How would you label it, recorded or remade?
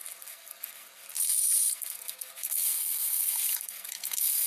remade